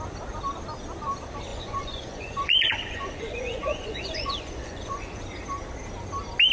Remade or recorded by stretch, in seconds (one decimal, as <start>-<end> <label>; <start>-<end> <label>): 0.0-1.5 recorded; 1.5-5.2 remade; 5.2-6.5 recorded